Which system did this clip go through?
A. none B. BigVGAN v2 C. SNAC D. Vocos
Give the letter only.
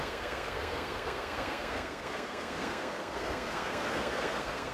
C